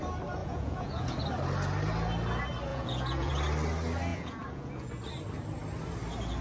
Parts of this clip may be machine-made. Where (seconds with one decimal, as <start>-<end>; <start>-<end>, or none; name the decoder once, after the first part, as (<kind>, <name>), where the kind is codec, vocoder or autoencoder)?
0.4-1.2 (vocoder, Vocos); 2.7-3.3; 4.1-4.9